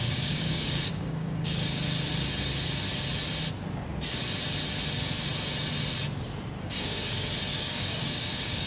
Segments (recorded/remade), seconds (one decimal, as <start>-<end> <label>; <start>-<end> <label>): 0.0-1.8 remade; 1.8-6.6 recorded; 6.6-8.7 remade